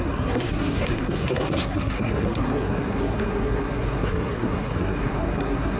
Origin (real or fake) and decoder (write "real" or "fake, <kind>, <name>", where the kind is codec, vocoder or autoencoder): fake, codec, SNAC